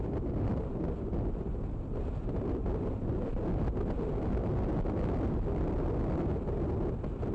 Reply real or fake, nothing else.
real